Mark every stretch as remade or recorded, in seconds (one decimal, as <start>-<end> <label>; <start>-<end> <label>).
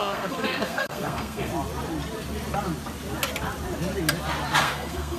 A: 0.0-1.5 remade; 1.5-4.6 recorded; 4.6-5.2 remade